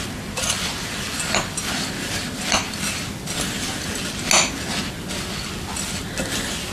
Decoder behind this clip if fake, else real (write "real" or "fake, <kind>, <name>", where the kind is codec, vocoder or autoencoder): real